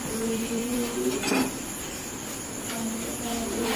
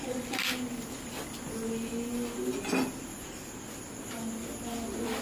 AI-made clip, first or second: first